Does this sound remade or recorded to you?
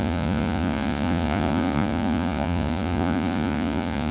remade